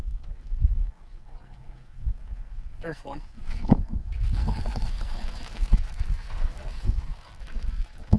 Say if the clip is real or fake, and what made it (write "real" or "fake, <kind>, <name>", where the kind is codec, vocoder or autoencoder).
fake, codec, SNAC